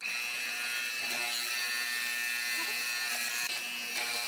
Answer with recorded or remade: recorded